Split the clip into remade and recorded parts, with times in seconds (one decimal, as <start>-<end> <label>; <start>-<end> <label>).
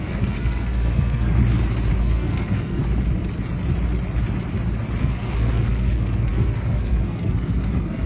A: 0.0-1.4 remade; 1.4-2.0 recorded; 2.0-2.8 remade; 2.8-5.0 recorded; 5.0-8.1 remade